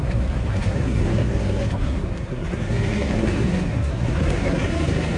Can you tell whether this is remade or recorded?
remade